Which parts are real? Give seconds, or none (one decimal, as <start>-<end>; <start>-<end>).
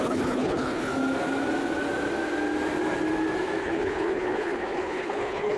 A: 0.9-3.6